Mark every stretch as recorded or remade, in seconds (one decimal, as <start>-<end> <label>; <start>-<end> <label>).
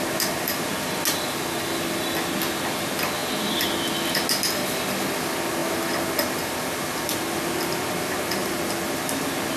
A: 0.0-9.6 recorded